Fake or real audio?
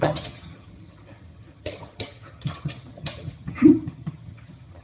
fake